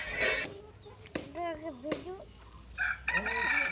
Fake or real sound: real